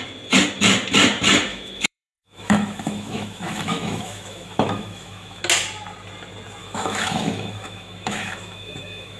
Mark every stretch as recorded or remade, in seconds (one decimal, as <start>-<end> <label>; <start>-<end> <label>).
0.0-1.5 recorded; 1.5-5.4 remade; 5.4-6.6 recorded; 6.6-9.2 remade